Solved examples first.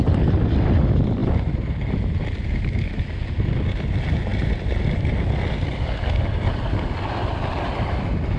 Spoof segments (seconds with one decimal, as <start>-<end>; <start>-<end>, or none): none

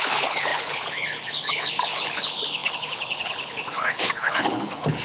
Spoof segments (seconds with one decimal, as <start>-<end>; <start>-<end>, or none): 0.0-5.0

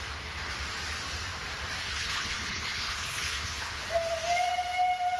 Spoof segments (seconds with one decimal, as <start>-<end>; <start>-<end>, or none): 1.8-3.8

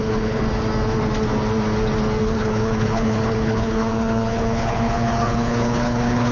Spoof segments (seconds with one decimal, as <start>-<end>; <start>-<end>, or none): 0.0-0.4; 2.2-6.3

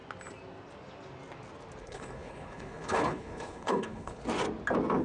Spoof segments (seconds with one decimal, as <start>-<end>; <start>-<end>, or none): 1.8-4.2

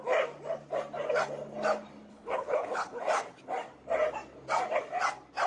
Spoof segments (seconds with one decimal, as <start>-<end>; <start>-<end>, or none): 2.1-3.0